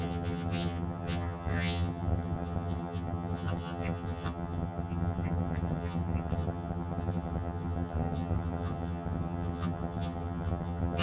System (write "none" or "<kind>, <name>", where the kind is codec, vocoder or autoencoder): vocoder, HiFi-GAN